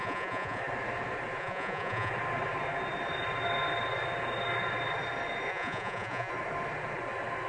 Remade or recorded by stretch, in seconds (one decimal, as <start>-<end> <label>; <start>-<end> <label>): 0.0-0.6 remade; 0.6-1.4 recorded; 1.4-2.1 remade; 2.1-5.5 recorded; 5.5-6.3 remade; 6.3-7.5 recorded